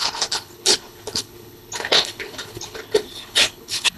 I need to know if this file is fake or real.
fake